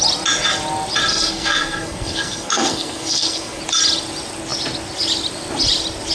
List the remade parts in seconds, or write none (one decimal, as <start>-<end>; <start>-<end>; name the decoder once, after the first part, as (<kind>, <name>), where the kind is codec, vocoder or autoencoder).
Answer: 1.1-3.6 (codec, SNAC)